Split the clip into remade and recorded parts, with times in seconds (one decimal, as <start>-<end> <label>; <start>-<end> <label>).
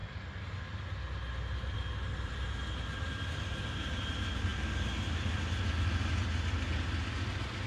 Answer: 0.0-7.7 recorded